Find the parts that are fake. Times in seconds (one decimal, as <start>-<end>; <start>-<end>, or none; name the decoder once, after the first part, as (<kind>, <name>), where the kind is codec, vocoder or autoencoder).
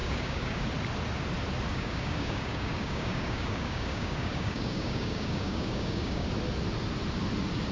0.0-0.6 (codec, DAC); 1.7-6.3